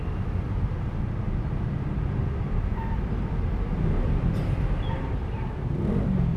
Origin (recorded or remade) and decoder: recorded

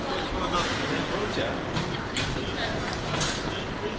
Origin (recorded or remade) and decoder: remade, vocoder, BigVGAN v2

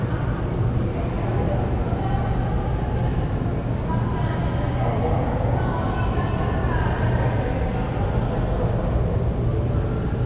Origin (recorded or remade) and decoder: recorded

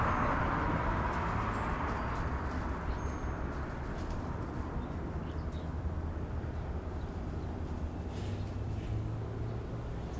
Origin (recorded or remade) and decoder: recorded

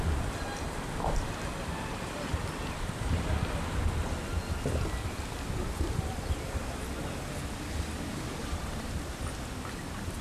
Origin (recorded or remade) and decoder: recorded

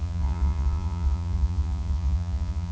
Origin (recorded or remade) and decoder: remade, vocoder, Vocos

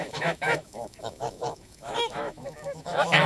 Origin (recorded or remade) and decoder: remade, autoencoder, DAC-VAE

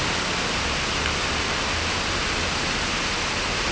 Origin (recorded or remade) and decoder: recorded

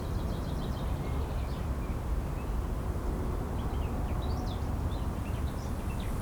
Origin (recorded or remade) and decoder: recorded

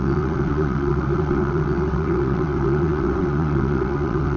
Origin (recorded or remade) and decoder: remade, vocoder, WaveNeXt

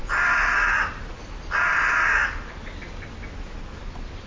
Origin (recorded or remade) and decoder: recorded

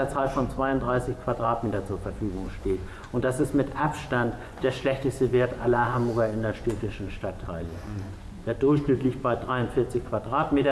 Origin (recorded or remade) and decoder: remade, vocoder, Vocos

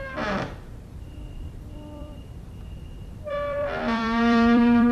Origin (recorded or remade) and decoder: remade, vocoder, BigVGAN v2